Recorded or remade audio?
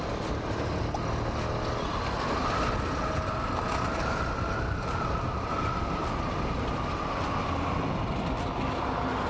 recorded